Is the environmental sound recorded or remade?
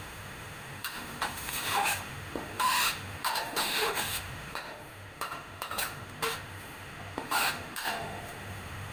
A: remade